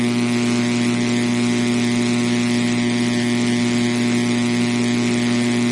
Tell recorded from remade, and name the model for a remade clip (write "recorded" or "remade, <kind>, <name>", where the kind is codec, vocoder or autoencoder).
recorded